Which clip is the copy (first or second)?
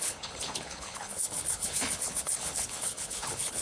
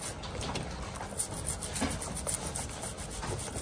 first